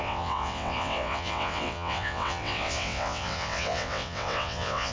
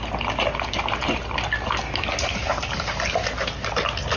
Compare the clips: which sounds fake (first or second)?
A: first